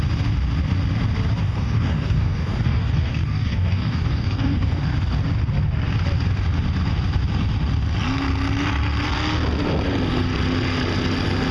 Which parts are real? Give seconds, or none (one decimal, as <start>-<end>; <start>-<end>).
0.0-1.4; 4.8-11.5